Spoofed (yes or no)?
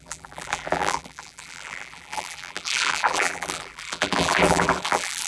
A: yes